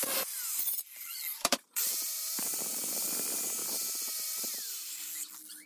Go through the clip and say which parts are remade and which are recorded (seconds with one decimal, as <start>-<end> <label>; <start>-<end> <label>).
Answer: 0.0-1.3 recorded; 1.3-3.1 remade; 3.1-5.7 recorded